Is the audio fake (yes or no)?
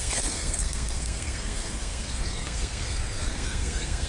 yes